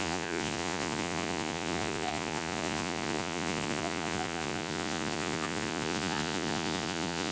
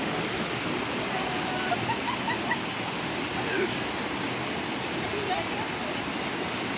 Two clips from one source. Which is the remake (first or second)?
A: first